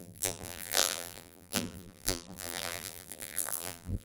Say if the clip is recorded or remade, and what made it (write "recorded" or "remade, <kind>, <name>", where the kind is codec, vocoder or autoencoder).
remade, vocoder, BigVGAN v2